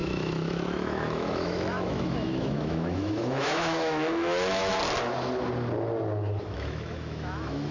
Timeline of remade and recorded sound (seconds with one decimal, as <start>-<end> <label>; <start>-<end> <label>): 0.0-4.7 remade; 4.7-6.4 recorded; 6.4-7.7 remade